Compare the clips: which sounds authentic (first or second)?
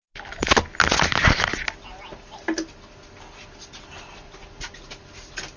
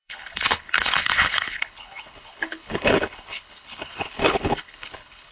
first